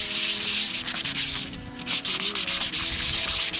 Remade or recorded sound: recorded